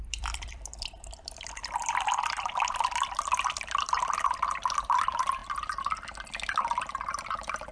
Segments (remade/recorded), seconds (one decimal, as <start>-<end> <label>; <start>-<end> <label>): 0.0-5.4 remade; 5.4-7.2 recorded; 7.2-7.7 remade